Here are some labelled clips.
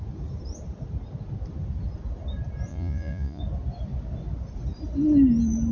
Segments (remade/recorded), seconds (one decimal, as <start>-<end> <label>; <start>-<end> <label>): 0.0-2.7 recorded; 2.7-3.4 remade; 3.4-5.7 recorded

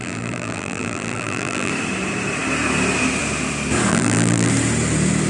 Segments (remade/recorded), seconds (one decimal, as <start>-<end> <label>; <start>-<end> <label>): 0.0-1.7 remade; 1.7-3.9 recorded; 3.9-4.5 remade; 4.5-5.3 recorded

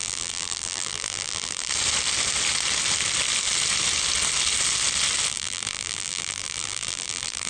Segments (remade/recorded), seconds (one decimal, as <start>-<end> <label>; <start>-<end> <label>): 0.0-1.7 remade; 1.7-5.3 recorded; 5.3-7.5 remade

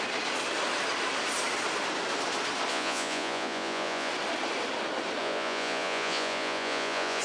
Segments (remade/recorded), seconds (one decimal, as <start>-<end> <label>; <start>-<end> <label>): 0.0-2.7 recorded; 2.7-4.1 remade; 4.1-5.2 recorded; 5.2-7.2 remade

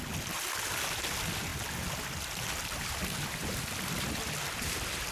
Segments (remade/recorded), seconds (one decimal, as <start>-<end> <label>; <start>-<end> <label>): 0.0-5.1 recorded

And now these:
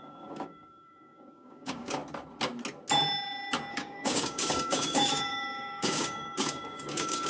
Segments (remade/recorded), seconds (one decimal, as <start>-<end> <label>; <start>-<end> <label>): 0.0-2.0 remade; 2.0-3.7 recorded; 3.7-7.3 remade

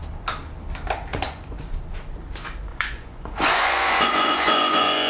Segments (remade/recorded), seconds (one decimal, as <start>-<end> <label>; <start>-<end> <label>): 0.0-1.1 recorded; 1.1-1.6 remade; 1.6-2.7 recorded; 2.7-5.1 remade

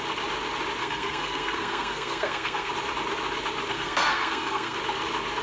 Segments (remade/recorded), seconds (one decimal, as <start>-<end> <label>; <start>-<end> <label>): 0.0-0.8 recorded; 0.8-2.7 remade; 2.7-3.7 recorded; 3.7-4.8 remade; 4.8-5.4 recorded